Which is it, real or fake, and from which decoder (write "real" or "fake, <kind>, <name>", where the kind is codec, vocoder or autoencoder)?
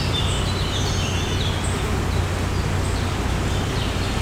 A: real